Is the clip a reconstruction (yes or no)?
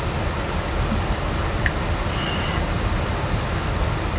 no